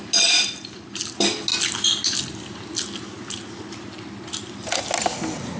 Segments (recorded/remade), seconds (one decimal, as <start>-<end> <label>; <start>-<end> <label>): 0.0-5.6 recorded